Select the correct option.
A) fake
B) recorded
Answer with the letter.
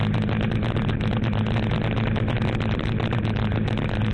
B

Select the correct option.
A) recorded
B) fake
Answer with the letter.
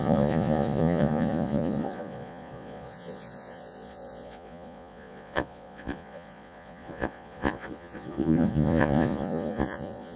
B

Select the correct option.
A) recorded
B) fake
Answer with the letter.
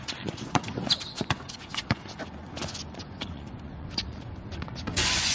B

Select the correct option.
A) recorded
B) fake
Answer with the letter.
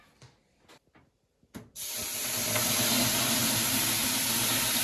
A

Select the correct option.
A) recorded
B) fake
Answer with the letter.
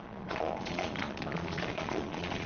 B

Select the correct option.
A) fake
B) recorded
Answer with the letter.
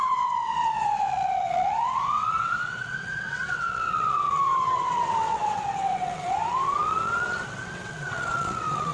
A